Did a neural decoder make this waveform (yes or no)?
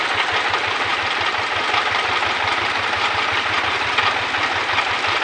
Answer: no